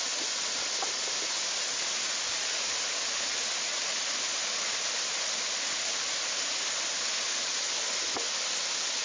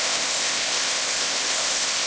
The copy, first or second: second